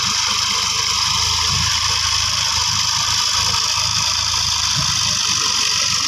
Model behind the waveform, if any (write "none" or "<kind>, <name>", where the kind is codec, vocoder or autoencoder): none